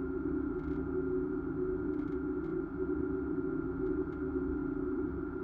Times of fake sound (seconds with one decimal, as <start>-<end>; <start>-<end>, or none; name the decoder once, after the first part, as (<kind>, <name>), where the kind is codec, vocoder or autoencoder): 4.6-5.4 (vocoder, BigVGAN v2)

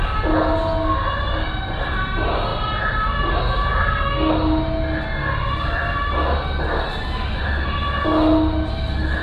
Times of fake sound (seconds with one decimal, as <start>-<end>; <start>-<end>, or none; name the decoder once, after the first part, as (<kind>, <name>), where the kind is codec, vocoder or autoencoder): 3.8-4.3 (codec, SNAC)

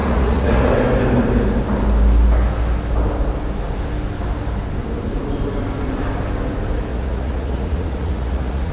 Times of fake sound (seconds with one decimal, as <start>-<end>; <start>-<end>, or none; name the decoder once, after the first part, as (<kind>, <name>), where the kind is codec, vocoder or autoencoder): 0.0-0.7 (vocoder, Vocos); 6.9-8.7